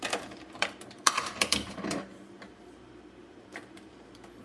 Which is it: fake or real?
fake